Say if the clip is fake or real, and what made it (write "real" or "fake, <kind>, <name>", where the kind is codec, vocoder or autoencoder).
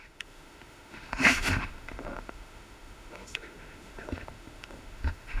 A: fake, autoencoder, DAC-VAE